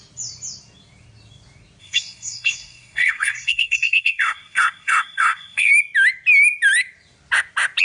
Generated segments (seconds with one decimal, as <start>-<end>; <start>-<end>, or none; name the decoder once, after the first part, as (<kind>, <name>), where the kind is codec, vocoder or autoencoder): 1.8-5.7 (codec, SNAC)